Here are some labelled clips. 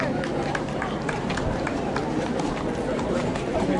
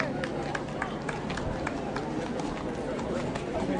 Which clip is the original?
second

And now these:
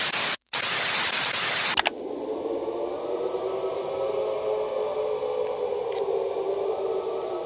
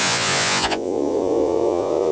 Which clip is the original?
first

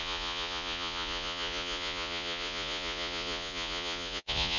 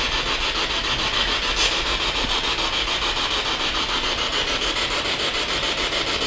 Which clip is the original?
second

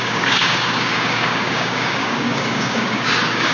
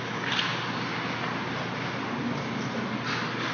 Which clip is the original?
second